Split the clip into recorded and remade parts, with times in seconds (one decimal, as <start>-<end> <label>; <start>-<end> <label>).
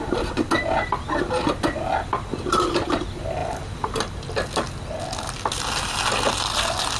0.0-7.0 recorded